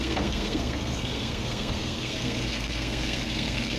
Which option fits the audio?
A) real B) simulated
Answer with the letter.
B